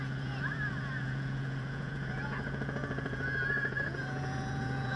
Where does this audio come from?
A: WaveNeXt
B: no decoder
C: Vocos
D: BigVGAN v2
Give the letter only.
C